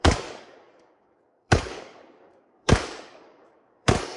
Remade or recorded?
remade